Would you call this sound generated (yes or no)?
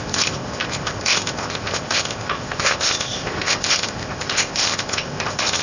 yes